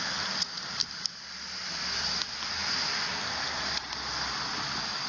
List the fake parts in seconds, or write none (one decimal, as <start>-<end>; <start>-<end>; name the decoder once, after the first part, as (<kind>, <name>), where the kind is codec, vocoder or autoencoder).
none